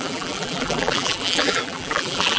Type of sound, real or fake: fake